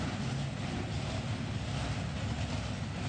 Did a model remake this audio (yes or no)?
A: no